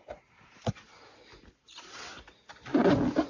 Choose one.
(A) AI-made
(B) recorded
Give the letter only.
B